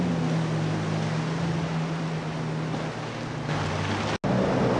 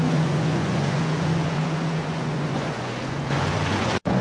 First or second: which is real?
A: first